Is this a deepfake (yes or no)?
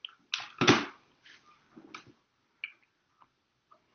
no